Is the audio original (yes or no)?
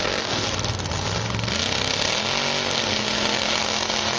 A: yes